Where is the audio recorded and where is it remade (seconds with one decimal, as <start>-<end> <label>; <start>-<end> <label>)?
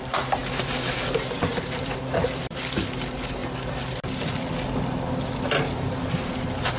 0.0-3.4 remade; 3.4-6.2 recorded; 6.2-6.8 remade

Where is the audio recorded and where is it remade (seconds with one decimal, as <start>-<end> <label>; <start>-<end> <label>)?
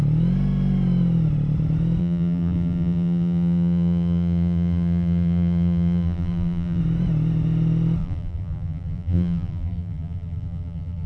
0.0-2.0 recorded; 2.0-6.8 remade; 6.8-8.0 recorded; 8.0-11.1 remade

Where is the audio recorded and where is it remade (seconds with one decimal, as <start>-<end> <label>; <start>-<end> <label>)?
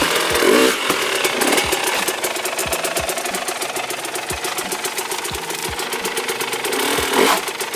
0.0-2.6 recorded; 2.6-3.2 remade; 3.2-5.6 recorded; 5.6-6.7 remade; 6.7-7.8 recorded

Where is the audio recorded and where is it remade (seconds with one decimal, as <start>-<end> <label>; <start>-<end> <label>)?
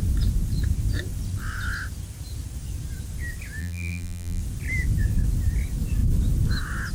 0.0-3.6 recorded; 3.6-4.4 remade; 4.4-6.9 recorded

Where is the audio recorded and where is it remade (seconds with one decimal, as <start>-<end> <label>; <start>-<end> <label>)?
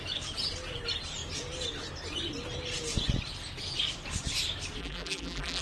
0.0-4.8 recorded; 4.8-5.6 remade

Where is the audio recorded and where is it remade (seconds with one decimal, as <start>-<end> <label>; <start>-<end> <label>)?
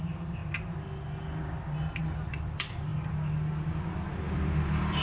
0.0-0.4 remade; 0.4-2.0 recorded; 2.0-2.9 remade; 2.9-3.7 recorded; 3.7-5.0 remade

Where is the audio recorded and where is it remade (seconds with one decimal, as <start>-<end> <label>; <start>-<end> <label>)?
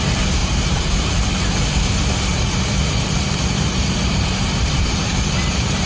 0.0-0.4 recorded; 0.4-1.1 remade; 1.1-2.3 recorded; 2.3-5.9 remade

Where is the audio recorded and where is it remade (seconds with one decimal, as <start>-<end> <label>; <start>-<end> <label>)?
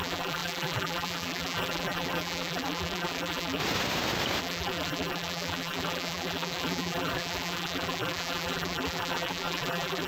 0.0-3.6 remade; 3.6-4.4 recorded; 4.4-10.1 remade